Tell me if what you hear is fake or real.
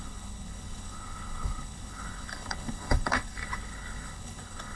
fake